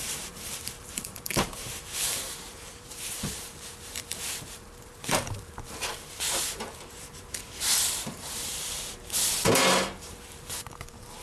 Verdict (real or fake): fake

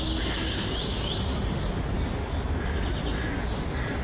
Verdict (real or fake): real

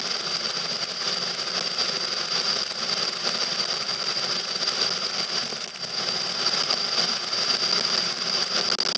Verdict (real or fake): real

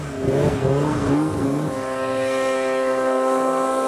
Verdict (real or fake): fake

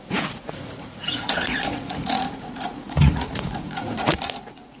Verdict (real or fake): fake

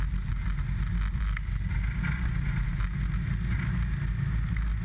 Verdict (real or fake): real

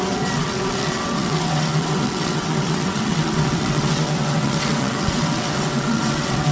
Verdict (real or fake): fake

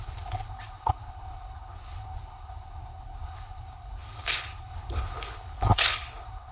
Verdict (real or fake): fake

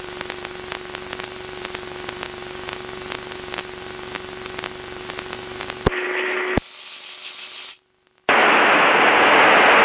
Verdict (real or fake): real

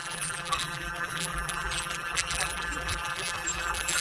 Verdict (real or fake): fake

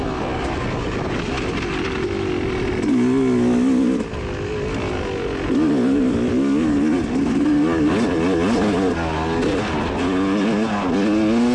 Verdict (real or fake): real